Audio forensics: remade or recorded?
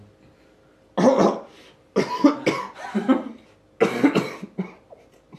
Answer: recorded